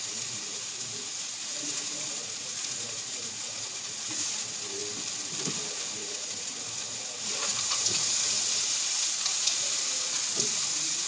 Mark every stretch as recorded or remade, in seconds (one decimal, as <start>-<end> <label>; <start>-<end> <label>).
0.0-4.8 remade; 4.8-5.8 recorded; 5.8-11.1 remade